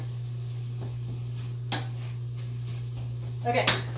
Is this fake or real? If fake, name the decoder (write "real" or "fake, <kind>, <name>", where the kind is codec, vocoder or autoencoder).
real